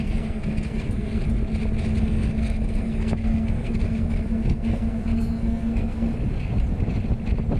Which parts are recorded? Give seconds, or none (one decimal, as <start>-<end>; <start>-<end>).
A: 1.2-2.0; 6.1-7.6